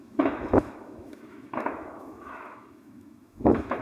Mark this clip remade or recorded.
remade